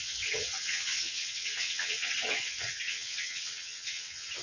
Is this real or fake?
fake